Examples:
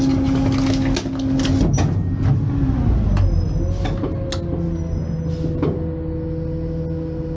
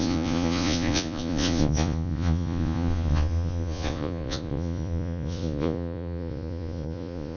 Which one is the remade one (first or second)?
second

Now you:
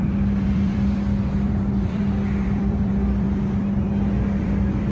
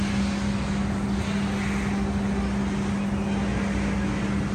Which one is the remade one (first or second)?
first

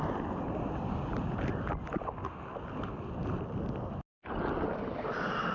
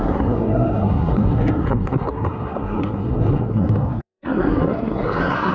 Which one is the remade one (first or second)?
second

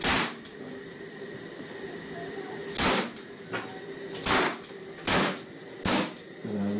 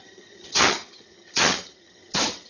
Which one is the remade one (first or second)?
second